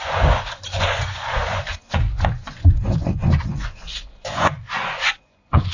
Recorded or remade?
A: remade